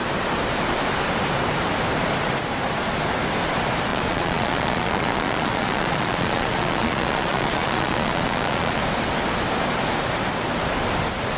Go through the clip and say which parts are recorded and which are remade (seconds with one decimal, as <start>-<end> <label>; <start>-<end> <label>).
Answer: 0.0-3.9 recorded; 3.9-8.8 remade; 8.8-11.4 recorded